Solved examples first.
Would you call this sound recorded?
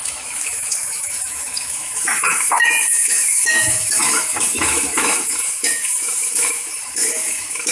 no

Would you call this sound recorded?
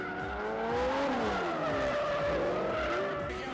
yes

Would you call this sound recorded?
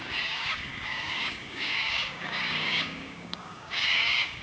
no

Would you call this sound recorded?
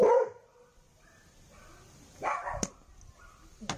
yes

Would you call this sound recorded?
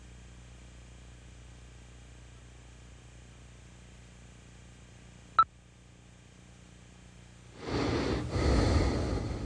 yes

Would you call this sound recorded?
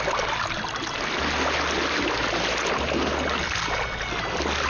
yes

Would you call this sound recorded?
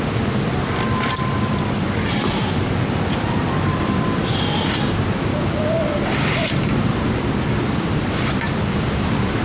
no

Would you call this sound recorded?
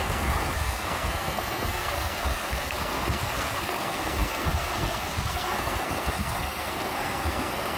no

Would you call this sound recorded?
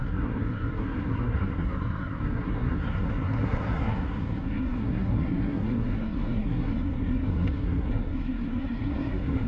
no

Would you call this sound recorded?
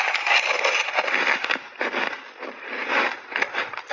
yes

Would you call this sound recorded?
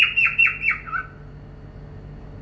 yes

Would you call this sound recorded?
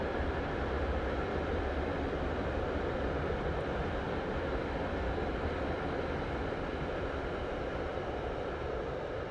no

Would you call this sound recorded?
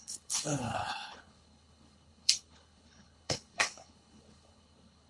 no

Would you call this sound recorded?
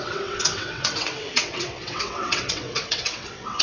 no